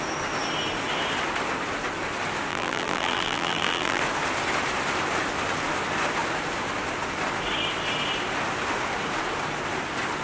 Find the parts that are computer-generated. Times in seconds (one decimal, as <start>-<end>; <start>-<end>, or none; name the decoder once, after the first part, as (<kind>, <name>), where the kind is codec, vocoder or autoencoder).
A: 2.5-4.0 (vocoder, BigVGAN v2)